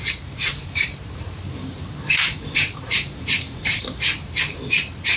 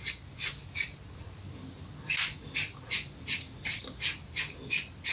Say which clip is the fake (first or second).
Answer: first